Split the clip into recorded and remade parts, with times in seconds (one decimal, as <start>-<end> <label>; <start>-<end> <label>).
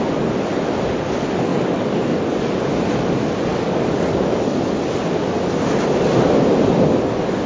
0.0-1.5 recorded; 1.5-2.5 remade; 2.5-3.5 recorded; 3.5-4.7 remade; 4.7-7.5 recorded